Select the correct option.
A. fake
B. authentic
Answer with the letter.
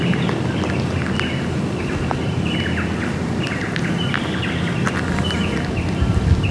B